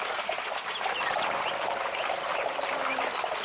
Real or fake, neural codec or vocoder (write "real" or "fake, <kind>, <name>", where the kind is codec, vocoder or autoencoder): real